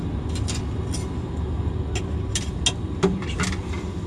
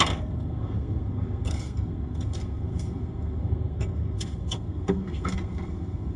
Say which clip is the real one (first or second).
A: first